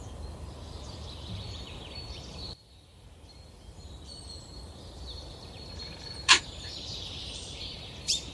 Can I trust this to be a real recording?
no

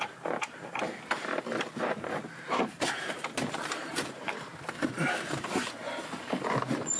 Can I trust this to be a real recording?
no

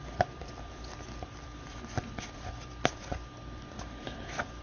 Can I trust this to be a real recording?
no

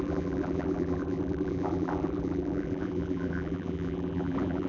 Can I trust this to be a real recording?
no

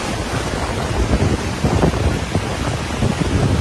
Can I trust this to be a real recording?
yes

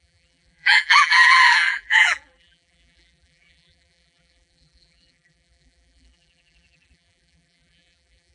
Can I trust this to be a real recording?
no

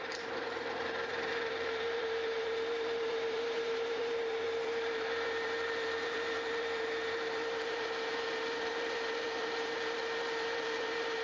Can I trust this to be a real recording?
no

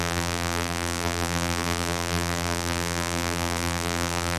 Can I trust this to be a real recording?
no